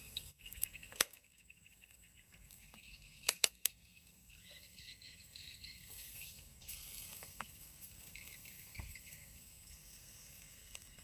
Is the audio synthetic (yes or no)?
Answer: yes